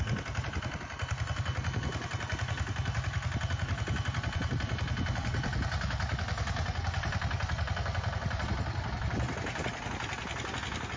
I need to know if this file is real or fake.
real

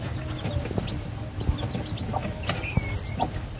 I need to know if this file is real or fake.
real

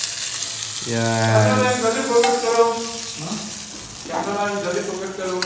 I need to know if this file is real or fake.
real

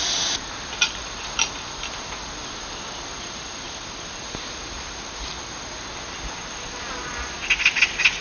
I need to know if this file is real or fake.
real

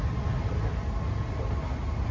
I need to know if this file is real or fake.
real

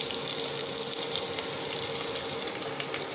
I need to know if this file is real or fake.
real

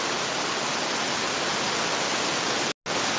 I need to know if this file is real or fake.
real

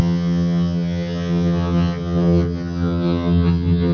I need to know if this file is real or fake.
fake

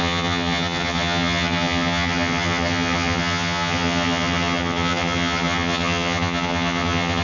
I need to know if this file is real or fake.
fake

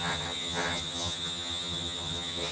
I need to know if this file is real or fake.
fake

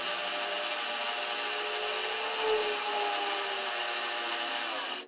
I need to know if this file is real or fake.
real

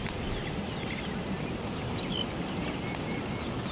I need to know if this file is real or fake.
real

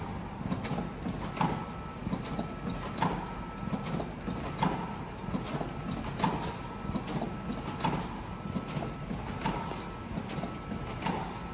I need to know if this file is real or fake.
real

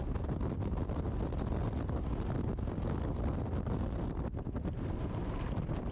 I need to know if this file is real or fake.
real